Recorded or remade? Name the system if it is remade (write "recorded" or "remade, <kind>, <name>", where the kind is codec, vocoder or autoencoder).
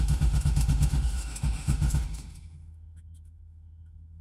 remade, autoencoder, DAC-VAE